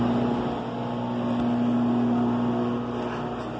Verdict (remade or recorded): recorded